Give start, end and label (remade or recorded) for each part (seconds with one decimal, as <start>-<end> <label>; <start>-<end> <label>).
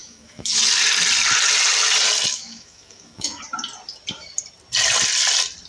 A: 0.0-0.6 remade; 0.6-2.3 recorded; 2.3-3.4 remade; 3.4-5.7 recorded